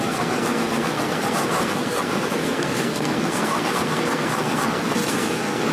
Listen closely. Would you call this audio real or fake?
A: fake